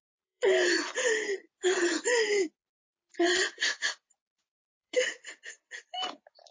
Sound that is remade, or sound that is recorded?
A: remade